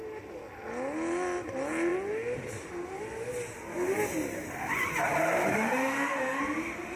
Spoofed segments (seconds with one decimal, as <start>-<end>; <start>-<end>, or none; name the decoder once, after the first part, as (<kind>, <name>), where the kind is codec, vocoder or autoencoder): 5.5-6.4 (autoencoder, DAC-VAE)